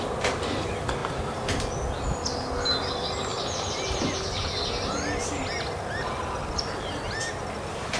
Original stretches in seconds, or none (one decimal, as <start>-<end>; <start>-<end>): 0.0-8.0